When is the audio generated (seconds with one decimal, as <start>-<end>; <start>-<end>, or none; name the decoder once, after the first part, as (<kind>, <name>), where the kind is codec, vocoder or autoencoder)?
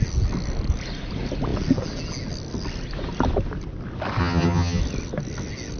4.2-4.8 (vocoder, HiFi-GAN)